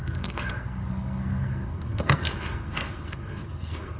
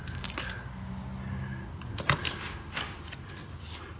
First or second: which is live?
second